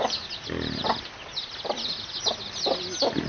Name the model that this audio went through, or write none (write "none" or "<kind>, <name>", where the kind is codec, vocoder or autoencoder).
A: none